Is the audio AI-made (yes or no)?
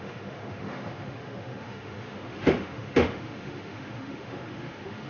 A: yes